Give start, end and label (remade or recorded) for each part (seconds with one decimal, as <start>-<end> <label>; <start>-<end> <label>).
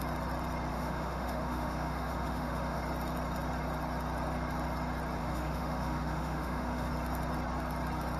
0.0-0.7 recorded; 0.7-2.8 remade; 2.8-5.2 recorded; 5.2-6.9 remade; 6.9-8.2 recorded